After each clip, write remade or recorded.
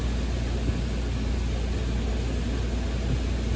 recorded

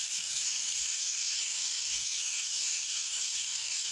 remade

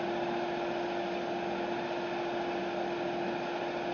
recorded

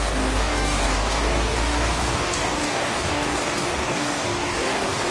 remade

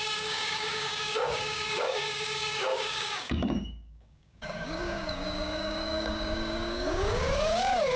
remade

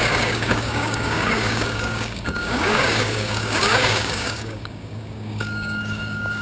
remade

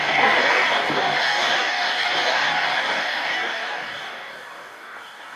remade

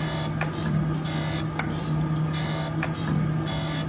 recorded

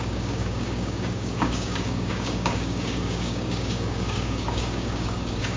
remade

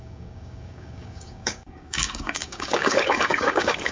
remade